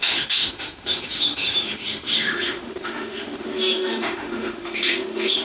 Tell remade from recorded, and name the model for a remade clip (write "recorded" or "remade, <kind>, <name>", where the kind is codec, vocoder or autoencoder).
remade, autoencoder, DAC-VAE